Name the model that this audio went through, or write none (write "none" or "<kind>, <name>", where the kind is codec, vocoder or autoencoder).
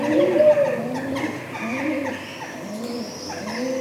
none